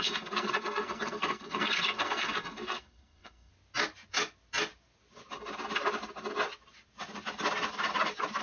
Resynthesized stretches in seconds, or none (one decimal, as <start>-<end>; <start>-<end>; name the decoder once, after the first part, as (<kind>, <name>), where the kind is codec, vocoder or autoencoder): 0.0-3.5 (codec, SNAC)